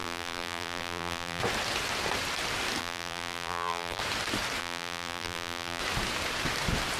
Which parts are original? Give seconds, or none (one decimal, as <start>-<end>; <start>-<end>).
1.4-2.8; 4.0-4.6; 5.8-7.0